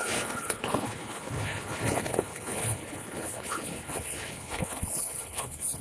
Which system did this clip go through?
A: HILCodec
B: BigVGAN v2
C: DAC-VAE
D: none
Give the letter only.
A